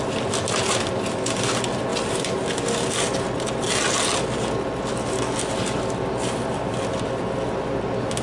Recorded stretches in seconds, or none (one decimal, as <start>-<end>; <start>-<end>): 0.0-8.2